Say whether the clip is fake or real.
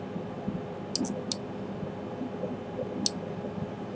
real